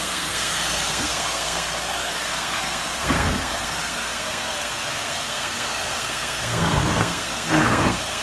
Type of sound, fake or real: fake